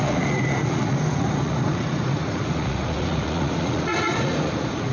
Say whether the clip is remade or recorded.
remade